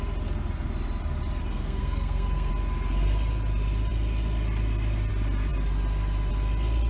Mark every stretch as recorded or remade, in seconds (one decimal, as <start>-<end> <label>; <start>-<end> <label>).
0.0-1.4 recorded; 1.4-2.5 remade; 2.5-6.9 recorded